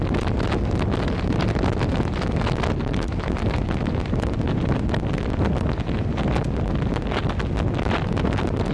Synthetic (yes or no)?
no